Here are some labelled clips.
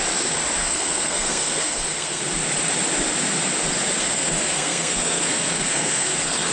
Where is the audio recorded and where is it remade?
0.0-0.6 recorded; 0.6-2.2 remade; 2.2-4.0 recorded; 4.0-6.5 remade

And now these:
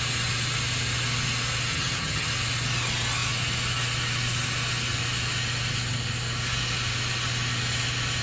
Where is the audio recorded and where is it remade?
0.0-1.7 recorded; 1.7-2.3 remade; 2.3-8.2 recorded

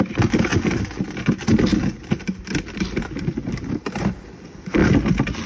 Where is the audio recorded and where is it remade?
0.0-5.5 recorded